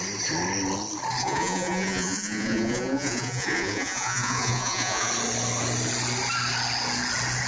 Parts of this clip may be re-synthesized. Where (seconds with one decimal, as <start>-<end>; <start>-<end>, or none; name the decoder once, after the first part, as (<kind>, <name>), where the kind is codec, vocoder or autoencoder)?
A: 1.2-5.1 (vocoder, Vocos)